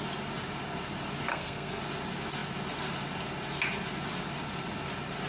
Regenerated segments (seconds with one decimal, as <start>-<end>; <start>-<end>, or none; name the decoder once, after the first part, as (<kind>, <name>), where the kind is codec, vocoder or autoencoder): 1.3-1.8 (codec, SNAC)